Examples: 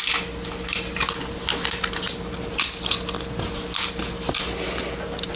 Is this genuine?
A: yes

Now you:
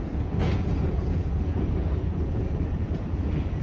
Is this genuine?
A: no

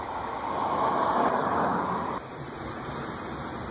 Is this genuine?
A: yes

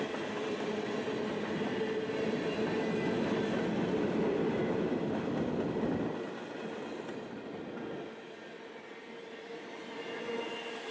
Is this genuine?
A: yes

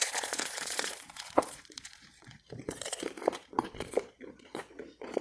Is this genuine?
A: no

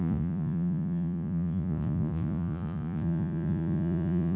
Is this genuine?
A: no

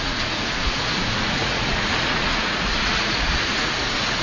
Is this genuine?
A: no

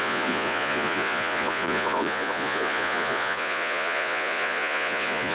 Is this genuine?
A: no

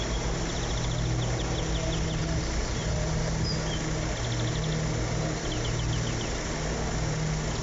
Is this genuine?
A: yes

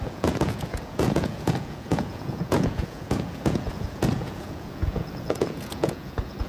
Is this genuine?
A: no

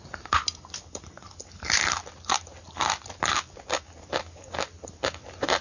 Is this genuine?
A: yes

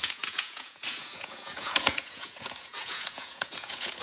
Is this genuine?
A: no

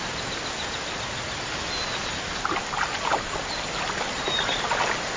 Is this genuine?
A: yes